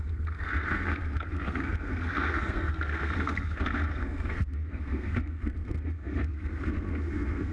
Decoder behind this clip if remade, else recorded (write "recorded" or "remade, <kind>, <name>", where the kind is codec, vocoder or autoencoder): remade, codec, SNAC